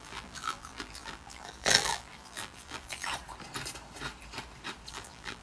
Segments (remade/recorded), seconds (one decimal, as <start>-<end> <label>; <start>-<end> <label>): 0.0-3.1 remade; 3.1-4.9 recorded; 4.9-5.4 remade